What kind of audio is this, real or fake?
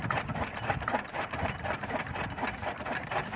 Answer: real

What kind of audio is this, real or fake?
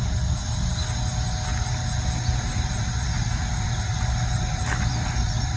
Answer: real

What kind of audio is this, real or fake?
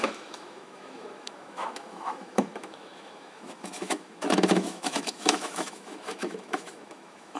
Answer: fake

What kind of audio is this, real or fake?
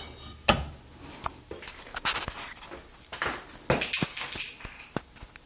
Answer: real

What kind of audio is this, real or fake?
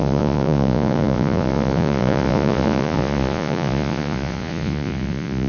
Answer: fake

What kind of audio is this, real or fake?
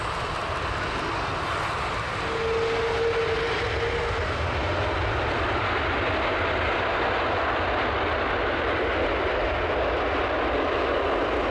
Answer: real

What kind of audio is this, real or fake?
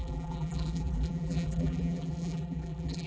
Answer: fake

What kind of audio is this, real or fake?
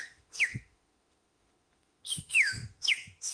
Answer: fake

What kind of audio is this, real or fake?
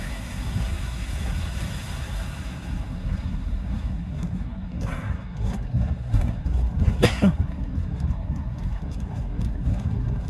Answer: fake